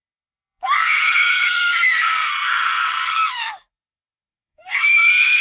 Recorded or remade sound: remade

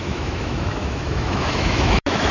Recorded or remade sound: remade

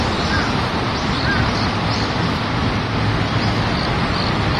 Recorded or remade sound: recorded